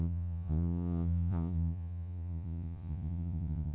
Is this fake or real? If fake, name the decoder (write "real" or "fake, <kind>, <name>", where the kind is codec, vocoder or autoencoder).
fake, vocoder, Vocos